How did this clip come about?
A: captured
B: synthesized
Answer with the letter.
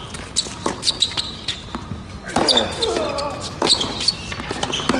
A